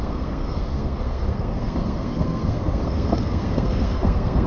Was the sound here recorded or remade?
remade